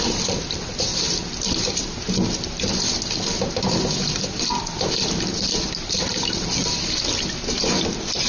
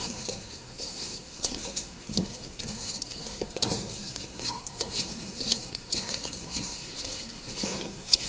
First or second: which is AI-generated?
second